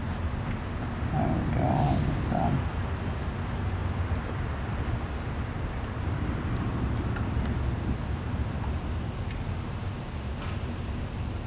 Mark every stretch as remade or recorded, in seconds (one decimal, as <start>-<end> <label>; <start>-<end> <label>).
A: 0.0-11.5 recorded